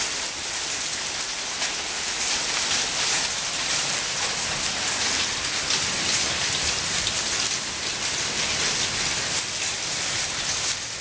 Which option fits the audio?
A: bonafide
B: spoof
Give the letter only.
A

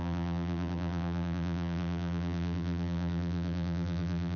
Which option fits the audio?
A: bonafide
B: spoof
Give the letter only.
B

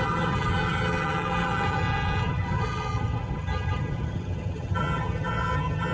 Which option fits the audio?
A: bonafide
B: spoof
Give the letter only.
B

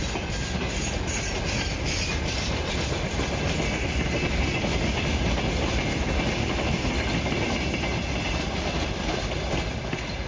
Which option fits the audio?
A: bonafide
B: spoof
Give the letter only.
A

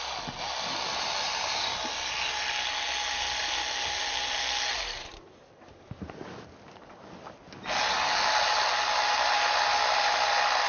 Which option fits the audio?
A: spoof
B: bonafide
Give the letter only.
B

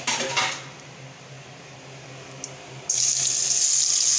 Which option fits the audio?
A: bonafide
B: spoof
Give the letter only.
A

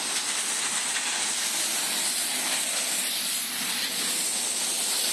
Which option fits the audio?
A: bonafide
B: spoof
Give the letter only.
A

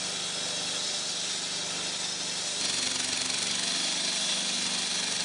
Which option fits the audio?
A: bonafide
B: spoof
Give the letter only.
A